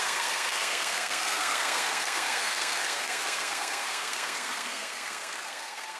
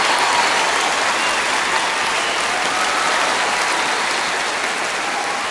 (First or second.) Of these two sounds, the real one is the second